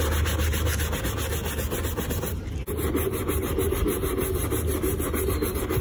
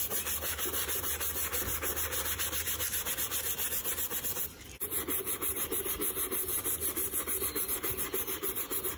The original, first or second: first